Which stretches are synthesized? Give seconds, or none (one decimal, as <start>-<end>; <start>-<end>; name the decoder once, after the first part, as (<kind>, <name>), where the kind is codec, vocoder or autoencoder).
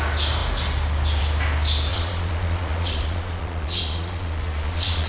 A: 1.9-5.1 (vocoder, Vocos)